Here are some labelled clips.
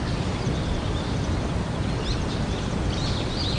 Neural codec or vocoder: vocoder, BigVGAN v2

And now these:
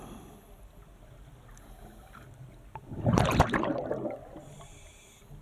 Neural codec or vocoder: none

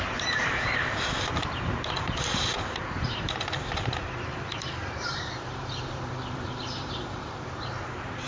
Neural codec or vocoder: vocoder, BigVGAN v2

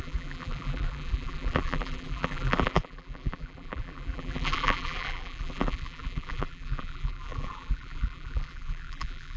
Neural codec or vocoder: vocoder, BigVGAN v2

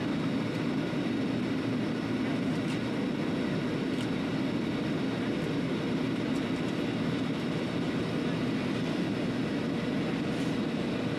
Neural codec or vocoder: none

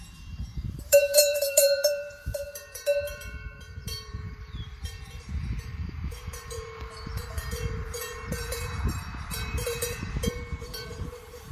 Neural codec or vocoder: vocoder, BigVGAN v2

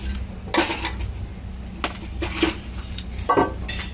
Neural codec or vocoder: none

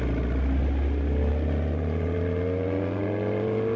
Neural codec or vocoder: none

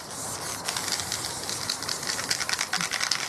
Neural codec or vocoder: vocoder, BigVGAN v2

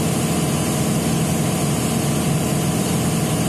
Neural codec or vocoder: none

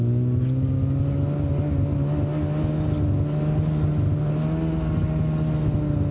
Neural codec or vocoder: none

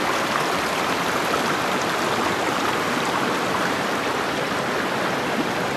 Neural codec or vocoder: none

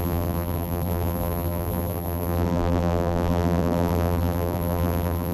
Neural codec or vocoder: vocoder, BigVGAN v2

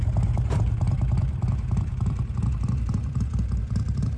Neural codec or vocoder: vocoder, BigVGAN v2